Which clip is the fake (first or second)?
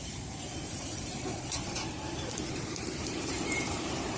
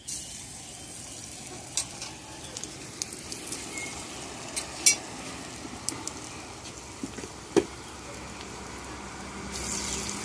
first